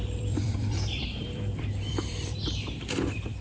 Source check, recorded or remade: remade